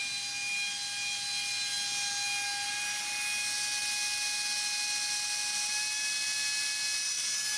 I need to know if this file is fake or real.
real